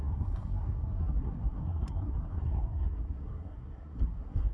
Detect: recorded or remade remade